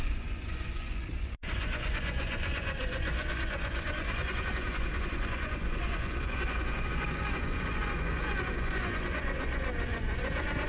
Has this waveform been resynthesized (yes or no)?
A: yes